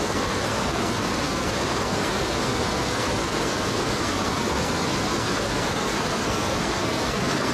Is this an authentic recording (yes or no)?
no